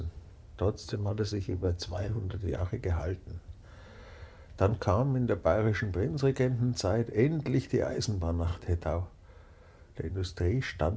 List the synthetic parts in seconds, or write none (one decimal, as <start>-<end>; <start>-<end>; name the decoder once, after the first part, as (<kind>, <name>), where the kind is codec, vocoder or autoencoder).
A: 0.8-2.6 (codec, SNAC)